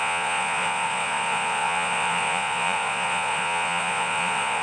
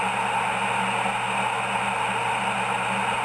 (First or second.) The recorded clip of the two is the second